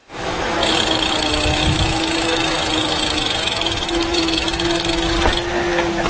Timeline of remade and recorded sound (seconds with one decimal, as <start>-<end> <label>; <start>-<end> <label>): 0.0-0.7 remade; 0.7-1.3 recorded; 1.3-5.0 remade; 5.0-6.1 recorded